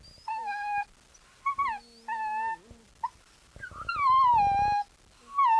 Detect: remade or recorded recorded